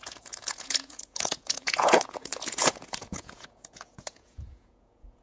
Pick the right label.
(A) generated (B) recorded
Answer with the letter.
A